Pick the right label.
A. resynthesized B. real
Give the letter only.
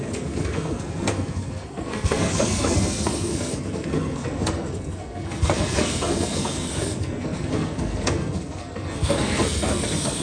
A